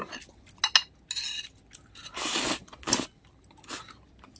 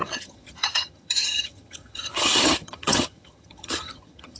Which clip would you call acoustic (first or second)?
first